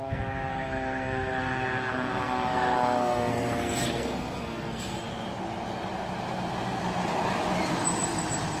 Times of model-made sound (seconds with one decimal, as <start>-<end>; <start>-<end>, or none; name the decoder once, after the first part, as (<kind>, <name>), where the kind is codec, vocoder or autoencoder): 0.0-5.1 (codec, SNAC)